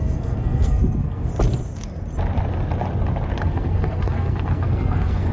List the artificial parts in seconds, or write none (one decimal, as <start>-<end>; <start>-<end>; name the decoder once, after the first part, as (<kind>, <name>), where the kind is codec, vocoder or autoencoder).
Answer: 0.0-1.3 (codec, SNAC); 3.4-5.3